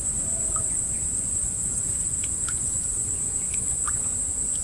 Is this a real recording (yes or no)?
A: no